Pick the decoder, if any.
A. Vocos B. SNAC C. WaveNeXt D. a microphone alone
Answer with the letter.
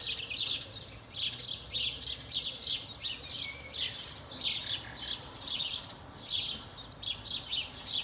D